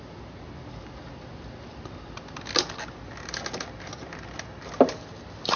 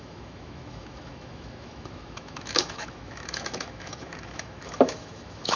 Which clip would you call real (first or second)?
first